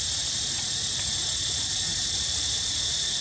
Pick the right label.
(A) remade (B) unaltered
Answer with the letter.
B